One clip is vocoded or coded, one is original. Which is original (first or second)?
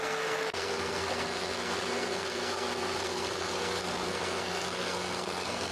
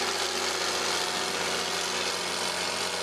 second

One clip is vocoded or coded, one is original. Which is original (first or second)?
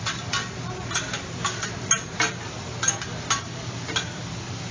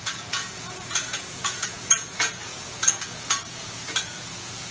first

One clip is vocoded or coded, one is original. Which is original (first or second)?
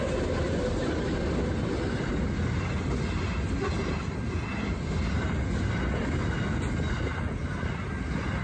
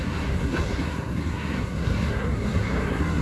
first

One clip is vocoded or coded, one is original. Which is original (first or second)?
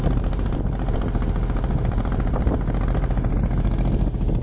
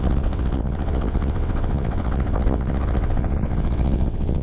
first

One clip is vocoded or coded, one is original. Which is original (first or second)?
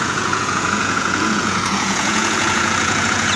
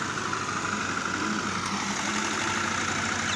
second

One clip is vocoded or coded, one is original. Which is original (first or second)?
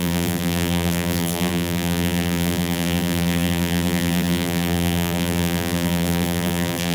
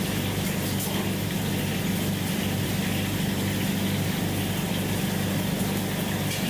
second